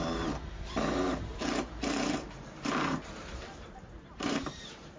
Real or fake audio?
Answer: fake